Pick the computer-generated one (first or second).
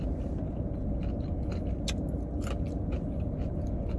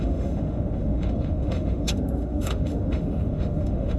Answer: second